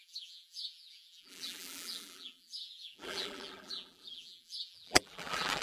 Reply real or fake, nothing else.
fake